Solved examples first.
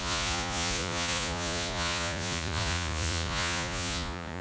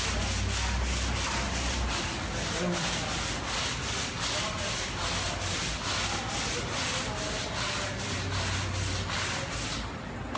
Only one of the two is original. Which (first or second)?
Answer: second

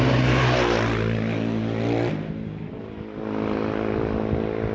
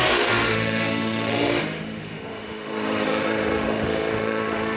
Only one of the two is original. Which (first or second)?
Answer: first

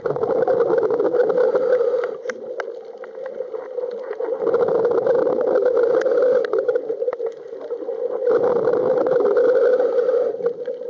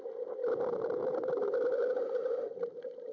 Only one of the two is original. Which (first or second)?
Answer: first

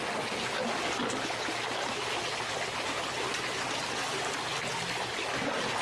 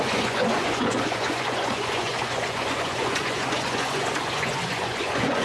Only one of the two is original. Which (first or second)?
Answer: first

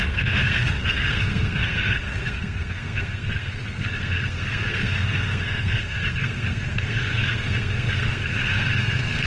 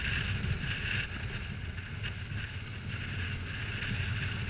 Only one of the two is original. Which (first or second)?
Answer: second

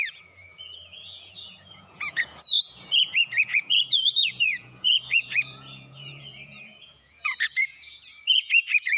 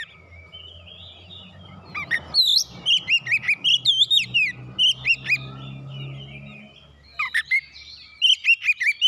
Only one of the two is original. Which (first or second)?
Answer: second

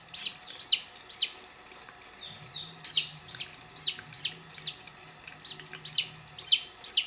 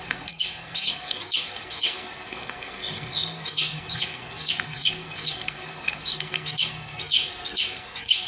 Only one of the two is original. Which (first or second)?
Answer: first